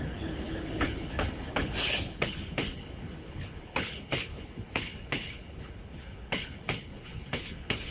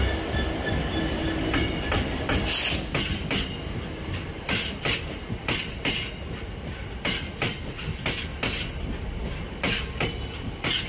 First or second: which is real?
second